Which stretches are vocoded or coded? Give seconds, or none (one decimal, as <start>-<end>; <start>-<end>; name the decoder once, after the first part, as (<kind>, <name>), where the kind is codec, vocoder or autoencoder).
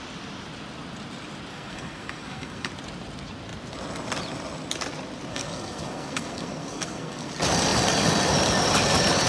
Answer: 1.5-2.7 (codec, SNAC); 5.3-7.3